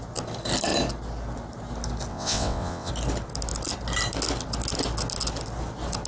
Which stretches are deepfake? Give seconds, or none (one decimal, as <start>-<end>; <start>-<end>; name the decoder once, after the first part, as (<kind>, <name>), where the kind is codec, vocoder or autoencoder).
2.1-2.9 (vocoder, WaveNeXt)